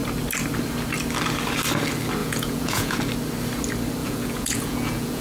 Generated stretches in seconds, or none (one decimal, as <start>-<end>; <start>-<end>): 2.2-3.0; 4.0-5.2